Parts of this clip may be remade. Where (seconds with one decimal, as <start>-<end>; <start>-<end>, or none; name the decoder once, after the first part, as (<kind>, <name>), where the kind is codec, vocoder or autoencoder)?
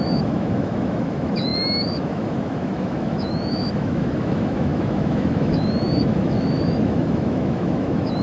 0.0-8.2 (autoencoder, DAC-VAE)